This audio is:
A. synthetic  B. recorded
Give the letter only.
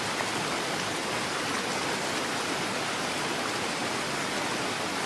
B